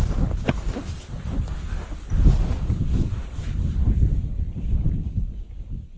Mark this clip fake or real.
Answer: real